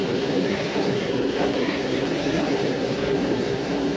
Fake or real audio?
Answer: fake